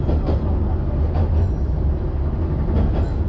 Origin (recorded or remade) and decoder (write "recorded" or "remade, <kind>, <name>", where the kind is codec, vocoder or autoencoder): recorded